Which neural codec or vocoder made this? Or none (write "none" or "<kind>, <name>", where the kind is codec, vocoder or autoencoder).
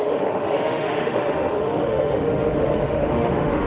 autoencoder, DAC-VAE